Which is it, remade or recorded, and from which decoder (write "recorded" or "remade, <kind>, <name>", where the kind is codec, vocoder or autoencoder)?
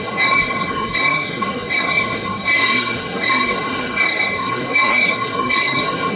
remade, codec, SNAC